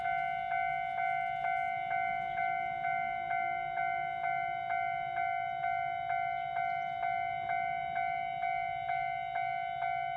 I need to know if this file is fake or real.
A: real